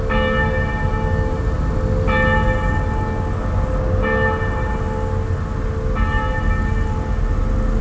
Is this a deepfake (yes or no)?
no